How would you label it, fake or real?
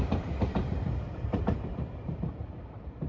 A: fake